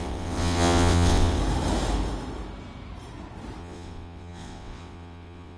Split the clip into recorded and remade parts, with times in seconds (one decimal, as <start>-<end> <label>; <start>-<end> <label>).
0.0-1.4 remade; 1.4-3.6 recorded; 3.6-5.6 remade